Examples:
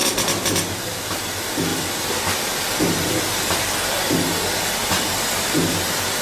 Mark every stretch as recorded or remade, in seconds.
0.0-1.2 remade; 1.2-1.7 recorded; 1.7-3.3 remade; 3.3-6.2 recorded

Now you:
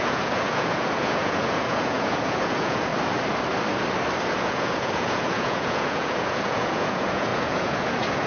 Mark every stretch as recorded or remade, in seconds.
0.0-2.9 remade; 2.9-4.2 recorded; 4.2-8.3 remade